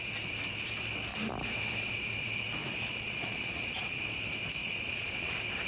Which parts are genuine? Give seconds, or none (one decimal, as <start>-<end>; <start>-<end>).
0.0-2.6; 4.0-4.6; 5.3-5.7